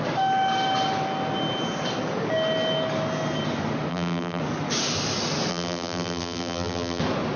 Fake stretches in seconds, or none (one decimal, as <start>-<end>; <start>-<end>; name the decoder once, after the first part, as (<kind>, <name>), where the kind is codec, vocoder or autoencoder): 3.9-4.4 (vocoder, BigVGAN v2); 5.5-7.0